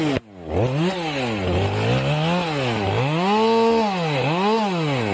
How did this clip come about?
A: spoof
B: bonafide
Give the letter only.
B